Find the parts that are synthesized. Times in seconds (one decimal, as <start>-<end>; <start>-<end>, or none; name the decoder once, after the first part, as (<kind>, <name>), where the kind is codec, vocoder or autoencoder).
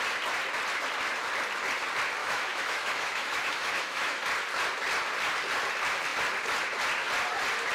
2.2-4.2 (autoencoder, DAC-VAE)